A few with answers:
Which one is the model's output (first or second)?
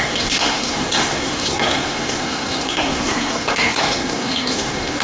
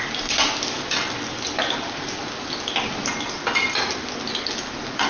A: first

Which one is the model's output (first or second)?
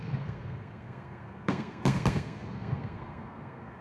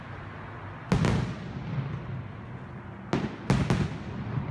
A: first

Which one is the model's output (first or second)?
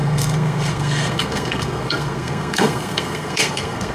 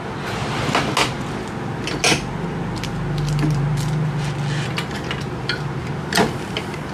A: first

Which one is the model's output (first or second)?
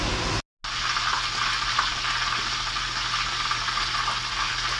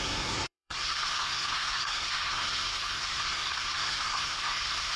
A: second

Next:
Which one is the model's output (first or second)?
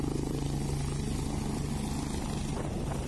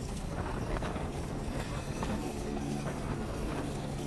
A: second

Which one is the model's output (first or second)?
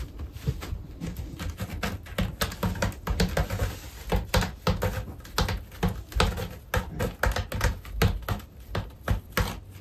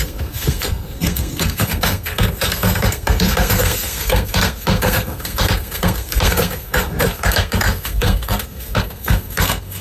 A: second